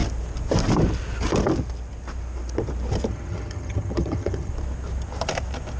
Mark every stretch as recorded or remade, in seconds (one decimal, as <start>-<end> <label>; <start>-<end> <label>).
0.0-3.1 recorded; 3.1-4.5 remade; 4.5-5.8 recorded